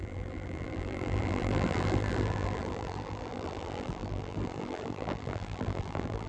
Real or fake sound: fake